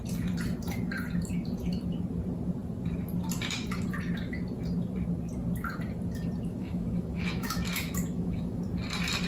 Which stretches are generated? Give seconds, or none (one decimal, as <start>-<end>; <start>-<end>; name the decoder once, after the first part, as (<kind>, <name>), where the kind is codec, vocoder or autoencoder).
6.5-8.6 (autoencoder, DAC-VAE)